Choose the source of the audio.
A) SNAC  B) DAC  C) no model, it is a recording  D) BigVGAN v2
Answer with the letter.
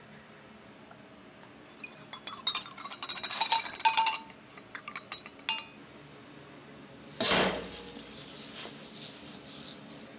C